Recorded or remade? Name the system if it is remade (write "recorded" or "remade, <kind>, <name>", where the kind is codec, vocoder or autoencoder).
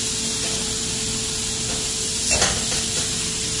recorded